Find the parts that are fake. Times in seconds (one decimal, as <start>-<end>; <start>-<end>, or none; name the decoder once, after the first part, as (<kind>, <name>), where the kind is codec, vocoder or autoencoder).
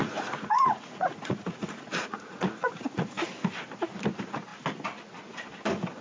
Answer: 0.0-3.3 (vocoder, Vocos)